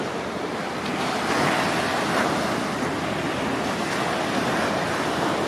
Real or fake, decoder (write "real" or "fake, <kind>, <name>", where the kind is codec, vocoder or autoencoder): real